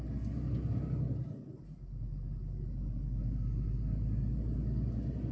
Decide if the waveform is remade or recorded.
recorded